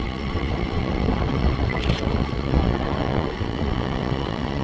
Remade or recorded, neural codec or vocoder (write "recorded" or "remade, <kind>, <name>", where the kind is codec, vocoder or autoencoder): remade, vocoder, WaveNeXt